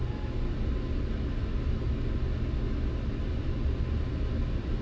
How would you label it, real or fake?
real